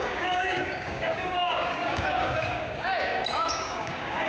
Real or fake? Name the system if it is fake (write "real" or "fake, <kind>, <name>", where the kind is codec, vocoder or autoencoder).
fake, codec, DAC